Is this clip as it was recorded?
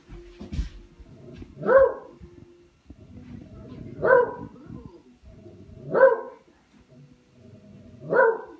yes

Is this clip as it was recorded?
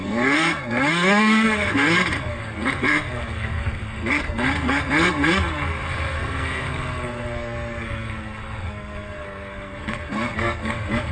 no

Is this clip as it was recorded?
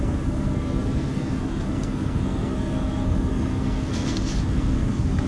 no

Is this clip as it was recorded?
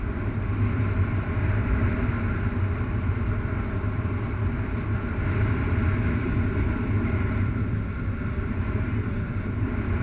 yes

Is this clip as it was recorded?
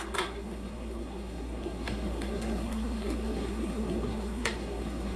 no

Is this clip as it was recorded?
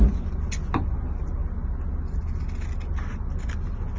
yes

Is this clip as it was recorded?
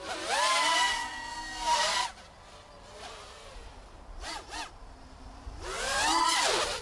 yes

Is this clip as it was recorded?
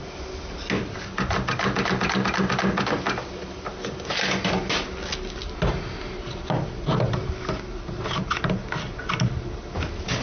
yes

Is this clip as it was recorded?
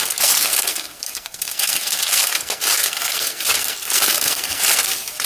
no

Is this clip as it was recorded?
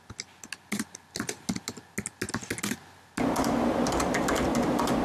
yes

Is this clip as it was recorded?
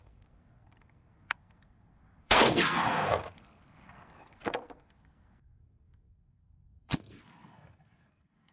no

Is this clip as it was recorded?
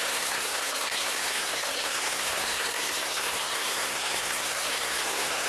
no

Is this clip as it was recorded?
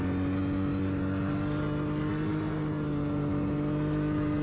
yes